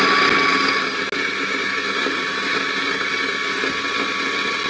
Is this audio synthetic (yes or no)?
no